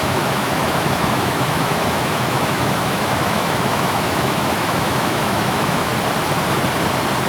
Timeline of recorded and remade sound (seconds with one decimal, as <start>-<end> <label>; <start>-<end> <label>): 0.0-5.9 remade; 5.9-7.3 recorded